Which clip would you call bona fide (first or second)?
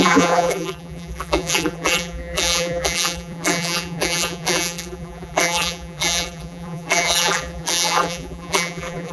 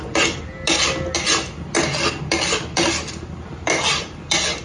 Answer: second